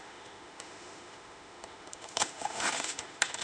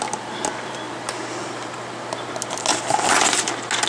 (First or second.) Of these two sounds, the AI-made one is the first